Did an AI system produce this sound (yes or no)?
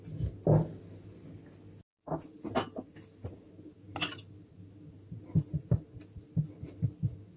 no